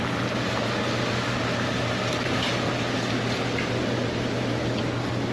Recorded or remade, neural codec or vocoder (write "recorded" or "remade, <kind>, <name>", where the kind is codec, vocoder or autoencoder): recorded